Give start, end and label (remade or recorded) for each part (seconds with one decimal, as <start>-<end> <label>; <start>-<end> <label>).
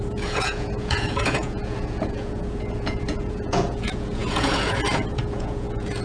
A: 0.0-6.0 remade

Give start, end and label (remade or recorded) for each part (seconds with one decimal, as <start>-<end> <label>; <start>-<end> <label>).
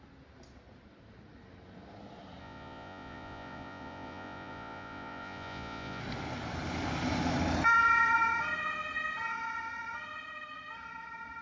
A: 0.0-2.4 recorded; 2.4-6.0 remade; 6.0-11.4 recorded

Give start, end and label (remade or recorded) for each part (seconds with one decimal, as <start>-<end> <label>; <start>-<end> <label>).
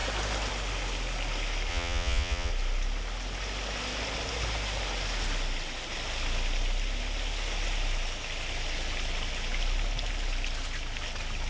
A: 0.0-1.7 recorded; 1.7-2.5 remade; 2.5-11.5 recorded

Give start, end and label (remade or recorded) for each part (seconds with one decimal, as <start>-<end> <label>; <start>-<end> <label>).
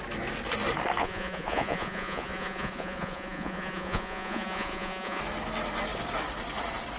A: 0.0-1.0 recorded; 1.0-5.2 remade; 5.2-7.0 recorded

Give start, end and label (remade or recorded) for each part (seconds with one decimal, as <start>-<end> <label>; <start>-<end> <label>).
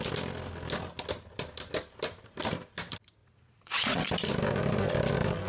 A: 0.0-3.2 recorded; 3.2-4.1 remade; 4.1-5.5 recorded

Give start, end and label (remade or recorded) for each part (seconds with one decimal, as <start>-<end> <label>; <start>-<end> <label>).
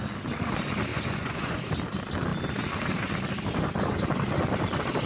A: 0.0-0.9 recorded; 0.9-1.6 remade; 1.6-5.1 recorded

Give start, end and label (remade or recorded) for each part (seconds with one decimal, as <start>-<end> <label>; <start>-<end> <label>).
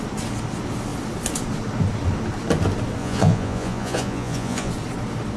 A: 0.0-3.0 recorded; 3.0-4.7 remade; 4.7-5.4 recorded